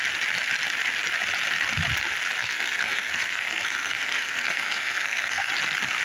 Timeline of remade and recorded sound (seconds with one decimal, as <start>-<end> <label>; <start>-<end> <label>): 0.0-2.4 recorded; 2.4-5.5 remade; 5.5-6.0 recorded